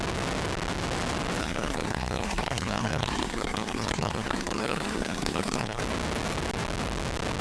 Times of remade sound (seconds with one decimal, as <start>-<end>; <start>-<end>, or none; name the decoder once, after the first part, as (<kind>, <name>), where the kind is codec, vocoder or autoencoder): 1.4-5.8 (codec, SNAC)

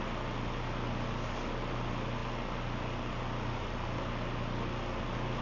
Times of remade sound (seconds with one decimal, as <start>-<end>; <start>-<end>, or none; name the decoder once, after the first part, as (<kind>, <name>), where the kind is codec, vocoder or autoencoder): none